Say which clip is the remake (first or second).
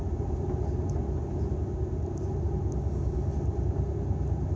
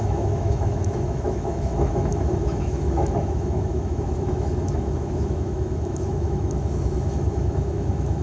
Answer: second